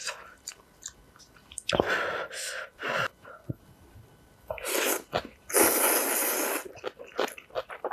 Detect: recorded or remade recorded